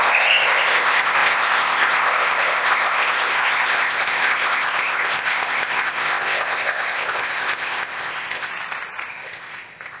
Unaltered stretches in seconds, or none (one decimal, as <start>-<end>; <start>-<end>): 8.5-9.1